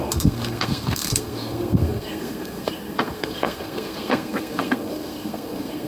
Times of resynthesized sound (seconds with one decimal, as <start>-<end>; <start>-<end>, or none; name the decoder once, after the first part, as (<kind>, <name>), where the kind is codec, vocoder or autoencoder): 0.0-5.9 (codec, SNAC)